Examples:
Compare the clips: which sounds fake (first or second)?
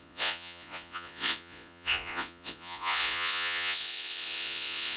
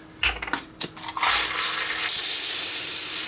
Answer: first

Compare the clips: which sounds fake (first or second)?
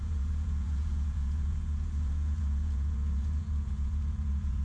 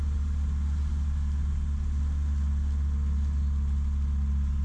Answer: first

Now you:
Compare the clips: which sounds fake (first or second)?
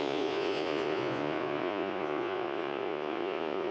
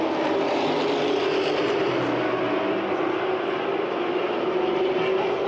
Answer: first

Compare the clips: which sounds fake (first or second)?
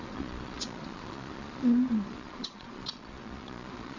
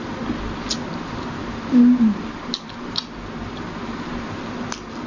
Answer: first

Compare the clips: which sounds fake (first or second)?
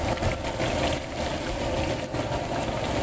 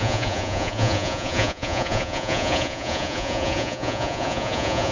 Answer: second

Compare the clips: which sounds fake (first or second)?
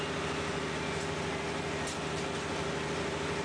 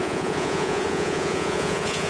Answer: second